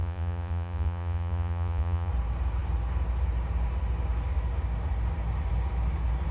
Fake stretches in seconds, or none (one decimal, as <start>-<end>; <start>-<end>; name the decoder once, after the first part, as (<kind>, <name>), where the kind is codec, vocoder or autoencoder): 0.0-2.1 (vocoder, Vocos)